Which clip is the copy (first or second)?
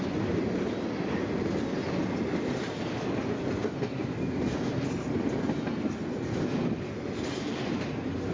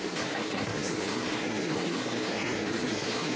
second